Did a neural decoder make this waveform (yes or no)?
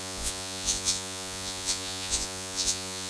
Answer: yes